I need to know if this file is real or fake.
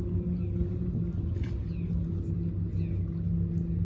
real